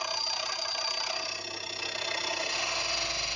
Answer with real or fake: real